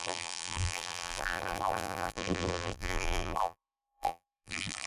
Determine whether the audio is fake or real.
fake